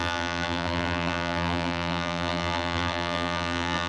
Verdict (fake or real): fake